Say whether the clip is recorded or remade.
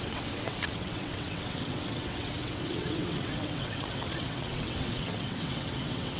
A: remade